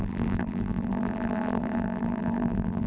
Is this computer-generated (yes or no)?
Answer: yes